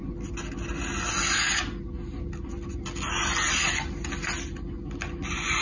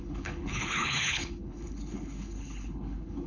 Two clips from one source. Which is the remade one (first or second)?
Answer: second